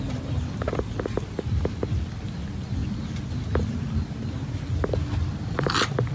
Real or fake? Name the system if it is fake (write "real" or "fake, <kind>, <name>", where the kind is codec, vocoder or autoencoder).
real